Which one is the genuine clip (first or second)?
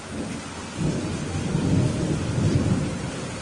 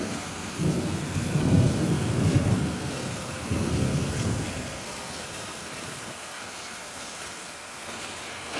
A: first